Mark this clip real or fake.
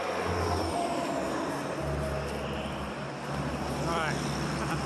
real